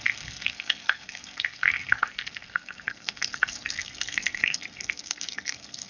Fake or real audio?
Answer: fake